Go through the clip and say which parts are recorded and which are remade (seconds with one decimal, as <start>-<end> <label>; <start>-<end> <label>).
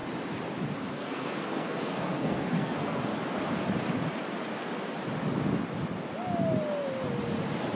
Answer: 0.0-0.9 recorded; 0.9-3.1 remade; 3.1-7.8 recorded